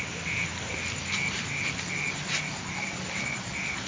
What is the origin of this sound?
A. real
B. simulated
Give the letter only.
A